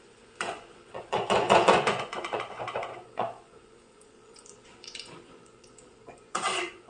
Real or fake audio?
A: fake